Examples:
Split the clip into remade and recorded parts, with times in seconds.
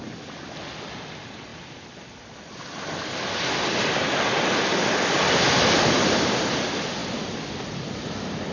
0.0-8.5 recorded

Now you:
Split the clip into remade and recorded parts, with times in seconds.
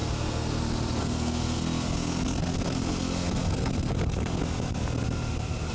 0.0-0.6 remade; 0.6-1.0 recorded; 1.0-4.4 remade; 4.4-5.7 recorded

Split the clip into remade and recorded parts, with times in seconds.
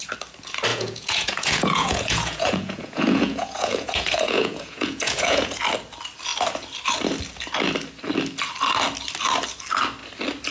0.0-0.7 recorded; 0.7-5.6 remade; 5.6-10.5 recorded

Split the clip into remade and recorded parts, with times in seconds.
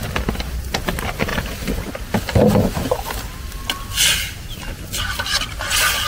0.0-6.1 recorded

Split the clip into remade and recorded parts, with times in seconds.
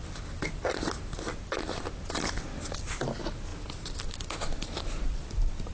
0.0-5.7 recorded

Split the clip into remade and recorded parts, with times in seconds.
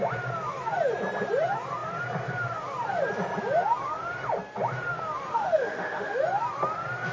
0.0-5.3 recorded; 5.3-6.2 remade; 6.2-7.1 recorded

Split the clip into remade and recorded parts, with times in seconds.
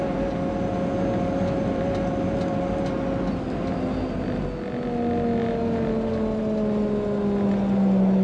0.0-8.2 recorded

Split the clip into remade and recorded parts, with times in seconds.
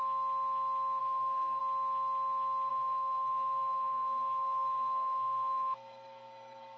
0.0-1.0 recorded; 1.0-1.6 remade; 1.6-2.7 recorded; 2.7-6.8 remade